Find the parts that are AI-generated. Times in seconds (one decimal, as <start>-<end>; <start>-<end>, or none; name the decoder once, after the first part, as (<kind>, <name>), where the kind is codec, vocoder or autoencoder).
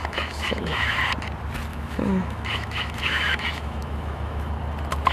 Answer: 0.0-1.0 (autoencoder, DAC-VAE); 1.7-4.5